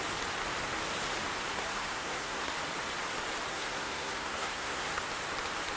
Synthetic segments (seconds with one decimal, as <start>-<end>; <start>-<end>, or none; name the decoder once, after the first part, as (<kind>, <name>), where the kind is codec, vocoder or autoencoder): 1.5-2.5 (codec, SNAC); 3.5-5.0